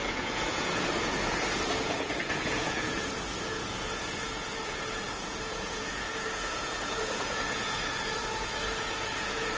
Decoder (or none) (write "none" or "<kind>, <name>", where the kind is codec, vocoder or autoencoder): vocoder, Vocos